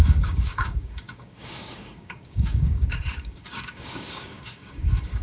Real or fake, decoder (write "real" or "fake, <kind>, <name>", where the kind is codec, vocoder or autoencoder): fake, codec, DAC